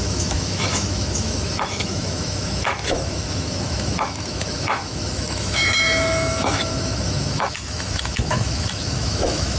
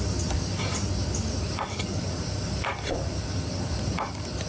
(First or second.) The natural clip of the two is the second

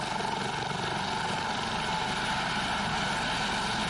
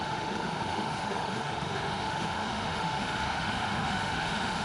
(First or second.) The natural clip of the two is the first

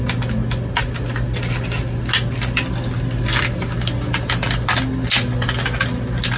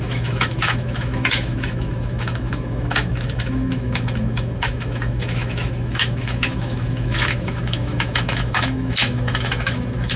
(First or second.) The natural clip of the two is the first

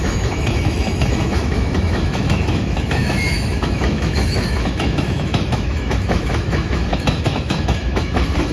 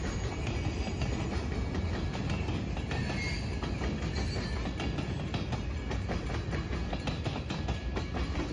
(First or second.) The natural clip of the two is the second